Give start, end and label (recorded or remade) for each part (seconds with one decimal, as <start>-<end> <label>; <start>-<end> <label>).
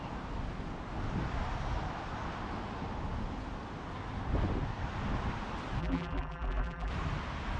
0.0-5.8 recorded; 5.8-6.9 remade; 6.9-7.6 recorded